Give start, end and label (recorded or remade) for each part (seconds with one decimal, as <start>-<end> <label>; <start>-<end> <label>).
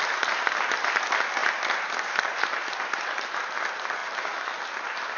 0.0-5.2 recorded